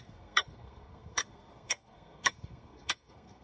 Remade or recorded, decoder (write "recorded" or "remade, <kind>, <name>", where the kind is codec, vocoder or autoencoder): remade, codec, SNAC